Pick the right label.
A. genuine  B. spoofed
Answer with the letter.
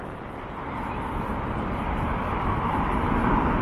A